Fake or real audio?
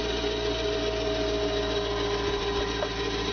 real